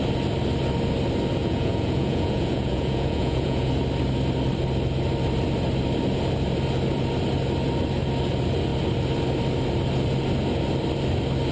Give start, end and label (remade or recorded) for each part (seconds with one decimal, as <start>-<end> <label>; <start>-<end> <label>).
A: 0.0-1.4 recorded; 1.4-3.7 remade; 3.7-11.5 recorded

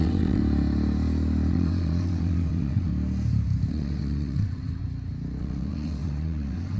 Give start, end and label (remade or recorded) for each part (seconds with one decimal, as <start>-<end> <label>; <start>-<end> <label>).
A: 0.0-0.4 remade; 0.4-1.5 recorded; 1.5-2.9 remade; 2.9-3.7 recorded; 3.7-4.8 remade; 4.8-5.4 recorded; 5.4-6.8 remade

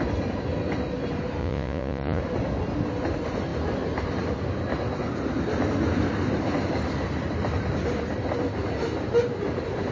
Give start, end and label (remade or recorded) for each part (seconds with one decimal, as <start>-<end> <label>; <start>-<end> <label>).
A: 0.0-1.4 recorded; 1.4-2.2 remade; 2.2-9.9 recorded

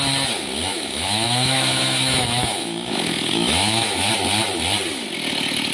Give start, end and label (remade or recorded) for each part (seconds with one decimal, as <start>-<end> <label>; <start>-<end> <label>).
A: 0.0-0.7 recorded; 0.7-4.1 remade; 4.1-5.7 recorded

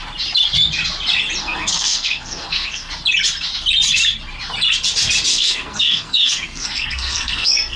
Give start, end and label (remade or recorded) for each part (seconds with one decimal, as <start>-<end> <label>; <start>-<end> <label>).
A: 0.0-1.4 recorded; 1.4-2.9 remade; 2.9-5.3 recorded; 5.3-7.8 remade